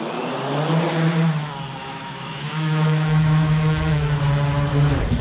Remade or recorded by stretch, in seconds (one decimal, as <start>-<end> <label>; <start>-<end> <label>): 0.0-1.8 recorded; 1.8-4.2 remade; 4.2-5.2 recorded